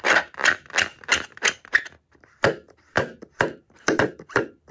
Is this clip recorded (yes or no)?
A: no